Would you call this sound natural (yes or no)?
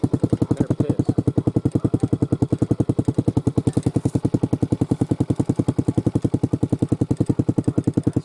yes